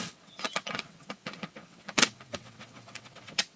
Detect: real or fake fake